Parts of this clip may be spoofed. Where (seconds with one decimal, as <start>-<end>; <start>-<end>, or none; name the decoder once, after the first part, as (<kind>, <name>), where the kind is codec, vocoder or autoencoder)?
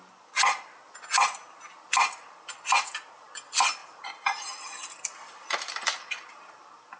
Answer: none